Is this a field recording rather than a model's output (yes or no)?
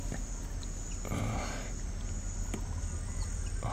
yes